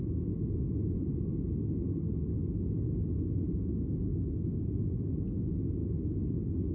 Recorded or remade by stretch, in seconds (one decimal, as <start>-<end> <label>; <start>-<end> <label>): 0.0-6.7 recorded